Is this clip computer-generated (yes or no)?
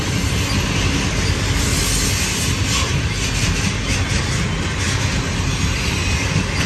no